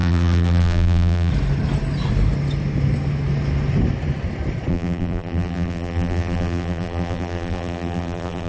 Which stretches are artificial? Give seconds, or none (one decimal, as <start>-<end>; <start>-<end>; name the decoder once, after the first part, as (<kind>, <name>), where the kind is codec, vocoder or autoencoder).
0.0-1.3 (vocoder, BigVGAN v2); 4.7-8.5